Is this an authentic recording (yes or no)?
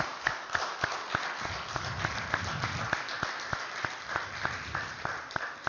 yes